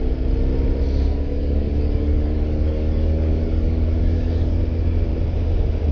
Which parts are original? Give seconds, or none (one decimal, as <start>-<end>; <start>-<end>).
0.0-1.1; 4.6-5.9